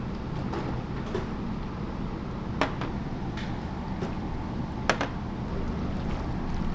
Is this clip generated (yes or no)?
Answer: no